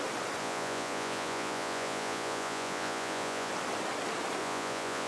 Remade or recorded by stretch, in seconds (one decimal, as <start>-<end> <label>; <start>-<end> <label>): 0.0-0.4 recorded; 0.4-3.5 remade; 3.5-4.4 recorded; 4.4-5.1 remade